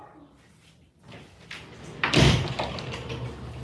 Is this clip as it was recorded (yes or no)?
yes